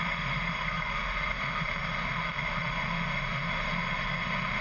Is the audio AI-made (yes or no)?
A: yes